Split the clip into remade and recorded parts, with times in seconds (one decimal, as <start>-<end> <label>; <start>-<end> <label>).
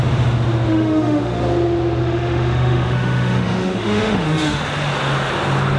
0.0-0.7 recorded; 0.7-1.4 remade; 1.4-2.0 recorded; 2.0-4.6 remade; 4.6-5.8 recorded